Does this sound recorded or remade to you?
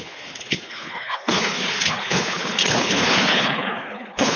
remade